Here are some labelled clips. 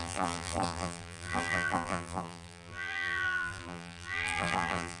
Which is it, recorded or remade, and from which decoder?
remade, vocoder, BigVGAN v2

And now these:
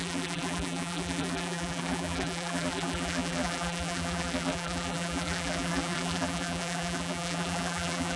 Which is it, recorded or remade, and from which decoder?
remade, vocoder, BigVGAN v2